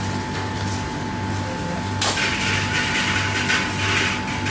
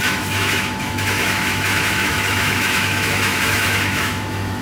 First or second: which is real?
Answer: first